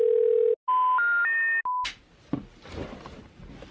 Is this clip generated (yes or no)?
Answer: no